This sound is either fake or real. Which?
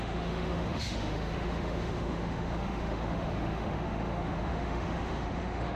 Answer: fake